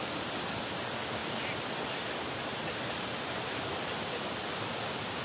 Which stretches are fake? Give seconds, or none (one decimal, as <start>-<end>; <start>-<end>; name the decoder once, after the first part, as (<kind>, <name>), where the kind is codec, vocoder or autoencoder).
none